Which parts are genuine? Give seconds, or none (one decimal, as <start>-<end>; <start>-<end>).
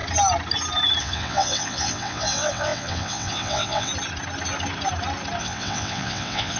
0.0-1.0; 3.9-5.4